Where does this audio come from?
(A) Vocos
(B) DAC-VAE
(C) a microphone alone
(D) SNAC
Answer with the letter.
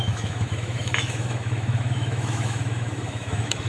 B